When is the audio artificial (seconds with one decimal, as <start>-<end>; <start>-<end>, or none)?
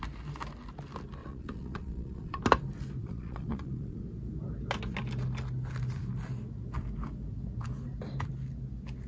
1.2-2.4; 3.0-4.0